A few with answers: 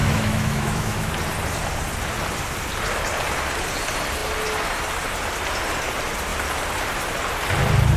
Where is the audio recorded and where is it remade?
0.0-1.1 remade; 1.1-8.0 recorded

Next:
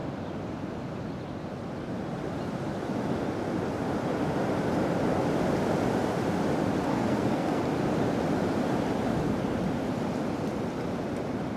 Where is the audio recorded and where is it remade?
0.0-6.9 recorded; 6.9-7.6 remade; 7.6-11.6 recorded

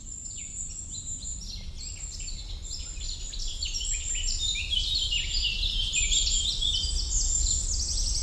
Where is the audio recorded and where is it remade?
0.0-3.5 recorded; 3.5-6.1 remade; 6.1-8.2 recorded

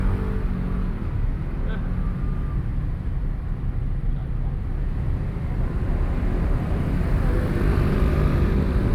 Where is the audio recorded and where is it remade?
0.0-2.7 recorded; 2.7-7.9 remade; 7.9-8.9 recorded

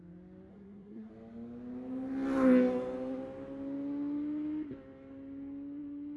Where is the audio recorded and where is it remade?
0.0-0.5 recorded; 0.5-1.1 remade; 1.1-6.2 recorded